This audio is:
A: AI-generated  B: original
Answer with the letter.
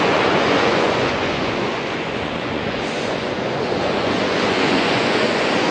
A